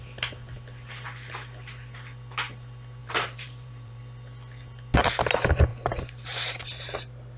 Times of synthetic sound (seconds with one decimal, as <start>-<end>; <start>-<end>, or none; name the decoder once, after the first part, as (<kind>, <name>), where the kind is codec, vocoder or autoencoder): 3.0-4.0 (vocoder, BigVGAN v2); 5.7-6.6